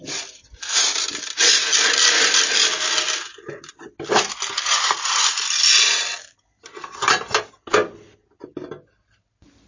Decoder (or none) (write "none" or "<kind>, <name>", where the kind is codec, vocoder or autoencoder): none